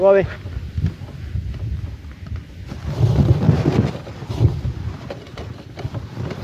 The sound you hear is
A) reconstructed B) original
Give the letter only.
B